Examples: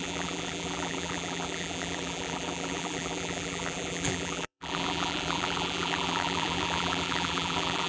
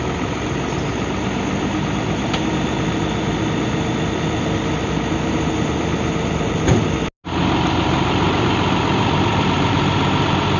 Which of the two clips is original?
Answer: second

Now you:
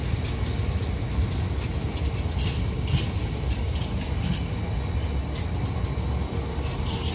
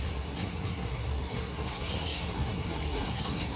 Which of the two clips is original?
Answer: first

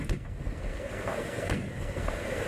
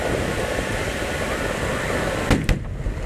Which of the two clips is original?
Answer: second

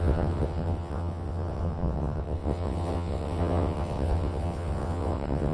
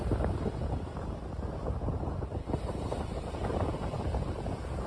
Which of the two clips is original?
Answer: second